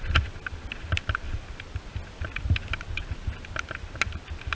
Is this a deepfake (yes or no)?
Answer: no